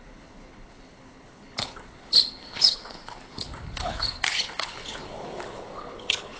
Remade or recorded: remade